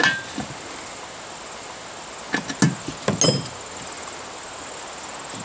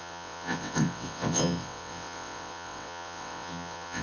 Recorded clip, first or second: first